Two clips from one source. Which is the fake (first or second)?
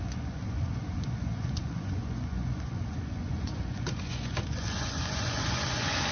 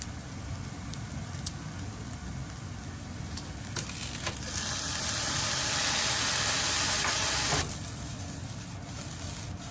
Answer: first